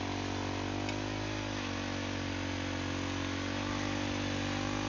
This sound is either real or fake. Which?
real